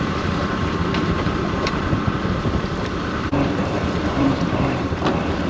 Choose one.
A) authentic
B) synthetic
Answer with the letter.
B